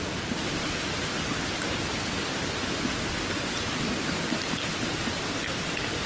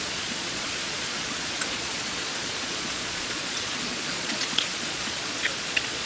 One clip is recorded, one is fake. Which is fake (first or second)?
second